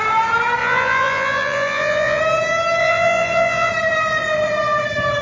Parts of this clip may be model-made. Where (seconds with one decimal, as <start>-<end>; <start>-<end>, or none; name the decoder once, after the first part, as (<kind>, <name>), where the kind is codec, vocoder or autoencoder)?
0.6-2.2 (vocoder, Vocos); 2.8-3.7